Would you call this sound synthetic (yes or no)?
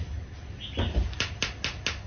no